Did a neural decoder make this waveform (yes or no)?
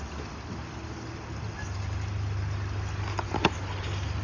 no